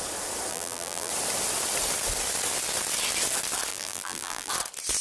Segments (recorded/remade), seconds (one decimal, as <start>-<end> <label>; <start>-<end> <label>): 0.0-0.5 recorded; 0.5-1.1 remade; 1.1-3.7 recorded; 3.7-4.5 remade; 4.5-5.0 recorded